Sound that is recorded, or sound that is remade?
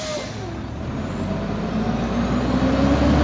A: recorded